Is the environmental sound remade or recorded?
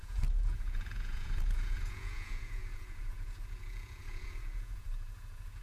remade